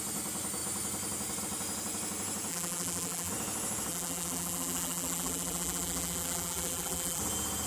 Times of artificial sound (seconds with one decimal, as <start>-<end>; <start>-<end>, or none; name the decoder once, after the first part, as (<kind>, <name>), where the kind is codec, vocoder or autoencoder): 2.5-3.3 (vocoder, BigVGAN v2); 3.9-7.2